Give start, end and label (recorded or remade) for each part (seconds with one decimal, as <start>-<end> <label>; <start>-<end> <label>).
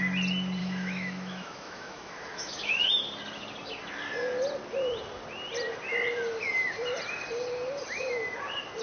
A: 0.0-0.6 recorded; 0.6-2.9 remade; 2.9-8.8 recorded